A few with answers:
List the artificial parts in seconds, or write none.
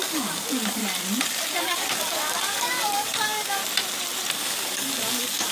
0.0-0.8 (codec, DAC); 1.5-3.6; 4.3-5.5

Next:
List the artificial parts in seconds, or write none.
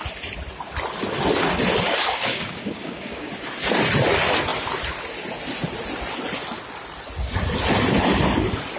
1.9-3.3 (codec, DAC)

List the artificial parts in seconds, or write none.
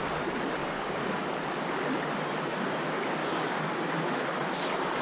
0.6-1.3 (codec, DAC); 3.2-3.9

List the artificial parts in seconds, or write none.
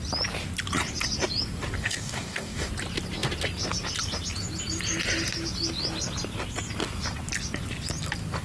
1.8-2.7 (codec, DAC)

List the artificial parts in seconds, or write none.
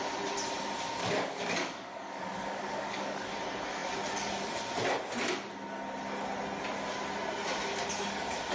1.0-3.3 (codec, DAC)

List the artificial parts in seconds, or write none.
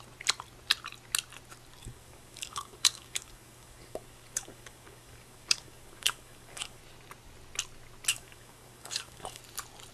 1.8-6.8 (codec, DAC); 8.1-9.4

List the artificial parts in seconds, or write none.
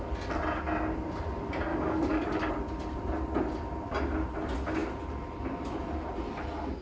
1.7-2.5 (codec, DAC)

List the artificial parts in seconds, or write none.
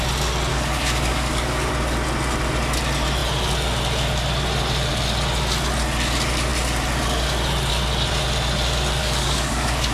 0.5-1.7 (codec, DAC); 9.0-9.9